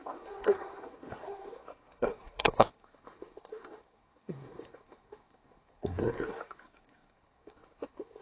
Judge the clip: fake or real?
fake